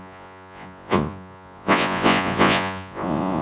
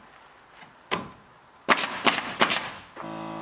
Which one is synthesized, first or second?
first